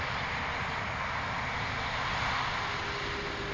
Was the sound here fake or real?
real